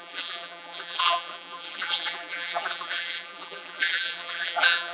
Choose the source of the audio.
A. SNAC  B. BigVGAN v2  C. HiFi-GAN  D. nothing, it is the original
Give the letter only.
B